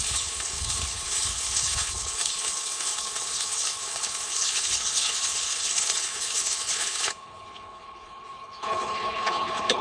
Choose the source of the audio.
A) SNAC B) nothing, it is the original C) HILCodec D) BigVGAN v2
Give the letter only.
C